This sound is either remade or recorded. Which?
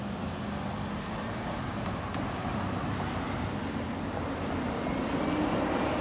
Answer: recorded